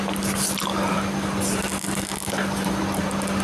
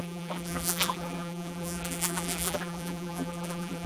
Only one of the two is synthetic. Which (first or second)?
second